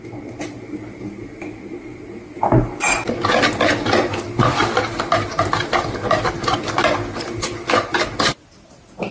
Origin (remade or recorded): recorded